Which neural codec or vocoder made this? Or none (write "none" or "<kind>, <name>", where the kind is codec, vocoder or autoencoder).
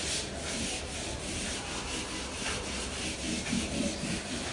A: none